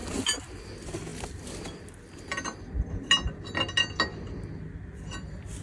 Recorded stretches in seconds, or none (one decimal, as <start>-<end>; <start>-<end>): 0.0-5.6